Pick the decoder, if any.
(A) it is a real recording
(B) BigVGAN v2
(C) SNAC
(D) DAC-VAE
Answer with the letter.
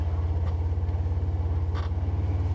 A